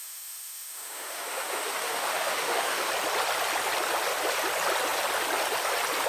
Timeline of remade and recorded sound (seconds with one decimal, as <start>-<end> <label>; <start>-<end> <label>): 0.0-2.9 remade; 2.9-6.1 recorded